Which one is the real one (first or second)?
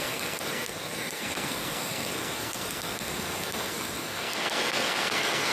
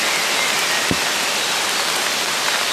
second